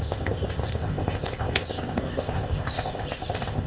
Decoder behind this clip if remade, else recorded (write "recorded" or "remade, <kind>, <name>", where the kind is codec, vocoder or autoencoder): remade, codec, ZipCodec